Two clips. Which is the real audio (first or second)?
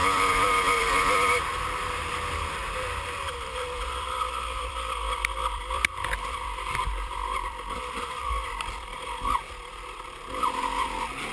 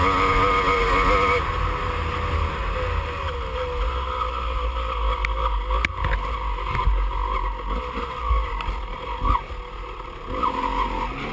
second